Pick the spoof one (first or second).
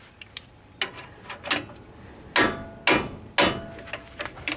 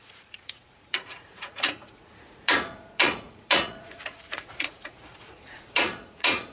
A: second